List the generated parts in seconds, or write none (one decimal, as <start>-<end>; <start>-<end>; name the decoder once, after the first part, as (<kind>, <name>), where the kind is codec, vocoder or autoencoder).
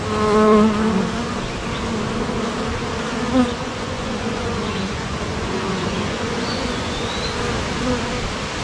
3.5-7.1 (vocoder, Vocos)